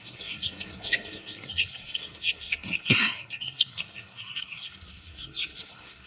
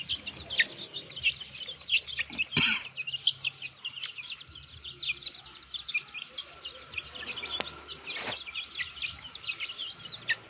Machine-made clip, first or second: first